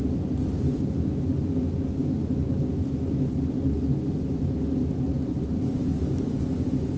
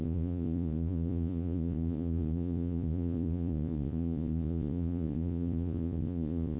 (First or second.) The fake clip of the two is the second